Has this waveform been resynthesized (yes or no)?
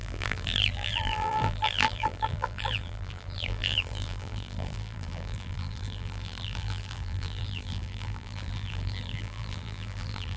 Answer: yes